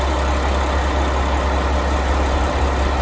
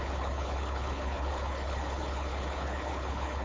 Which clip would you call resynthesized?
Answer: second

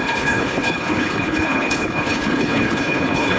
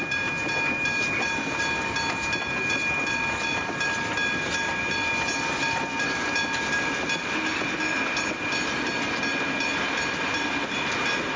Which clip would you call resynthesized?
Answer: first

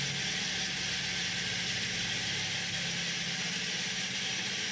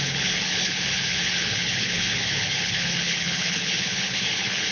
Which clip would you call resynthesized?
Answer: second